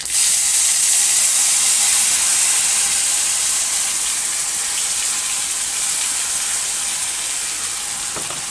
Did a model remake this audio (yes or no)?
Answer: no